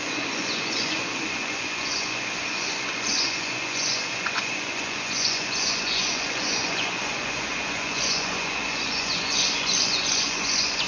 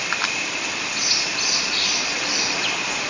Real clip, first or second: second